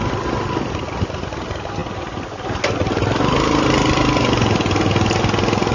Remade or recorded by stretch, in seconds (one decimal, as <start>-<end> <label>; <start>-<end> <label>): 0.0-5.7 recorded